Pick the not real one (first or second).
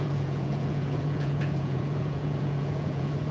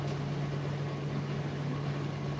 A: first